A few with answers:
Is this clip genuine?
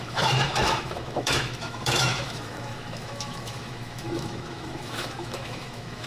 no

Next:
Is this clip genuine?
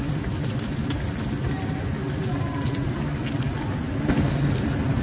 yes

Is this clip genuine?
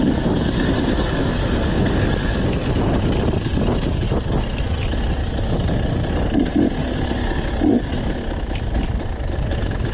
yes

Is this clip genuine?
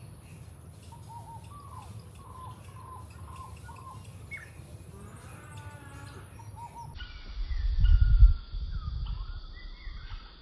yes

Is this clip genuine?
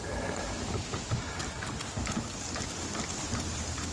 yes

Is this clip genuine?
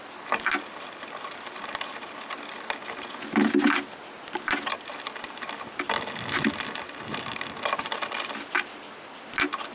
yes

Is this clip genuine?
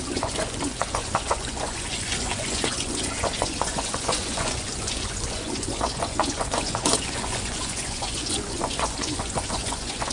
no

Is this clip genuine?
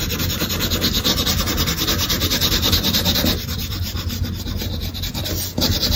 yes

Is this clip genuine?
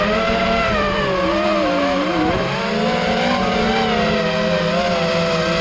yes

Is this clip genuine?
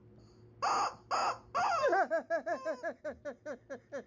yes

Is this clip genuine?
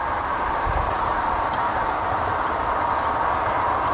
yes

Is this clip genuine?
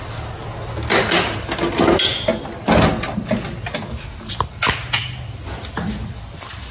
yes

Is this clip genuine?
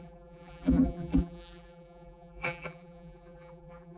no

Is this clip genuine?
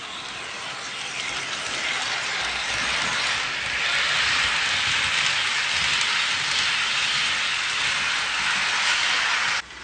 yes